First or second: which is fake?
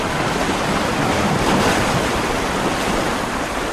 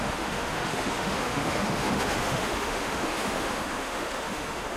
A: second